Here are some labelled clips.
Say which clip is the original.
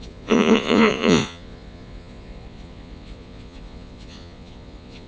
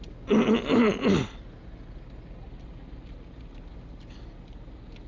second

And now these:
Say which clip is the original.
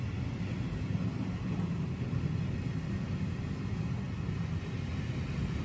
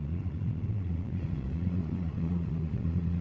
first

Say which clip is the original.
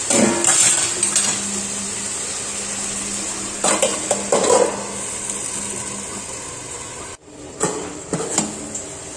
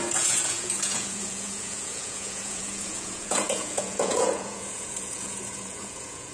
first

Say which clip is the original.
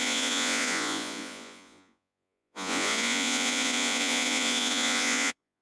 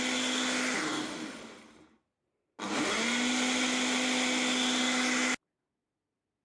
second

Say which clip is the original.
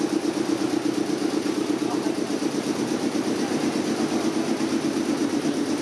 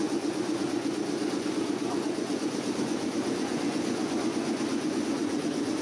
first